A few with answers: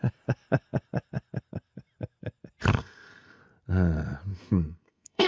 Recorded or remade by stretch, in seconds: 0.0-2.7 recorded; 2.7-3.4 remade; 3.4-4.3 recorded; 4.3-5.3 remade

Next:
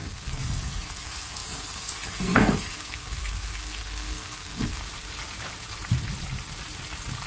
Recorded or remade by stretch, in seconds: 0.0-4.8 remade; 4.8-7.3 recorded

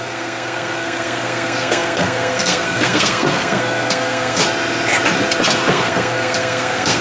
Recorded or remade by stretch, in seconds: 0.0-4.4 remade; 4.4-5.7 recorded; 5.7-7.0 remade

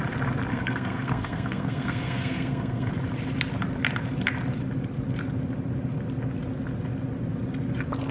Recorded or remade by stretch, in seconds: 0.0-0.5 recorded; 0.5-2.9 remade; 2.9-8.1 recorded

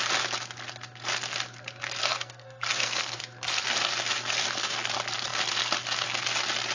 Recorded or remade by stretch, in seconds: 0.0-2.0 recorded; 2.0-3.2 remade; 3.2-6.7 recorded